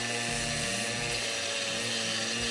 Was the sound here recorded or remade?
recorded